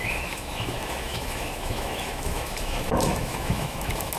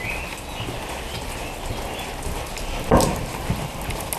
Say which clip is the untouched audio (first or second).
second